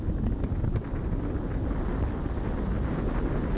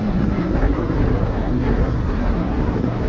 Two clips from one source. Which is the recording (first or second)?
first